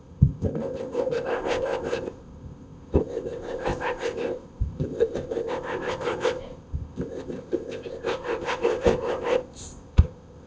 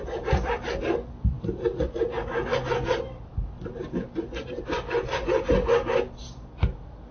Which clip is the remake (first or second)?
first